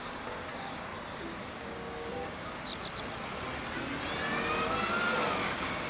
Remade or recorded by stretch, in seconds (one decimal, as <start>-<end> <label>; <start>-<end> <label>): 0.0-0.9 remade; 0.9-1.4 recorded; 1.4-2.7 remade; 2.7-5.4 recorded; 5.4-5.9 remade